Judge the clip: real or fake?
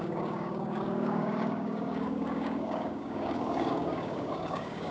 fake